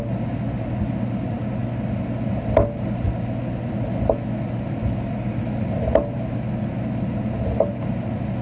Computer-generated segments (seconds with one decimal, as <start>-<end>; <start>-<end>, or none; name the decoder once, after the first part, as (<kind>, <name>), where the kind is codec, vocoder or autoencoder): none